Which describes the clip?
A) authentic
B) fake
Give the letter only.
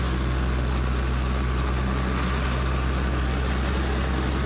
A